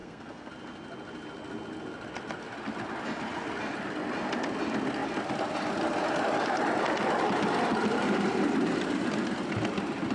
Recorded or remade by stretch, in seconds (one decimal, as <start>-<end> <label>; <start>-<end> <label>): 0.0-0.5 remade; 0.5-10.1 recorded